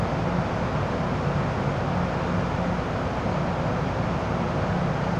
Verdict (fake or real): real